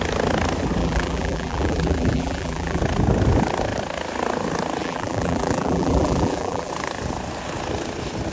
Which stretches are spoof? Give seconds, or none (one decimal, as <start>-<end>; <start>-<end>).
0.8-2.8; 4.8-6.7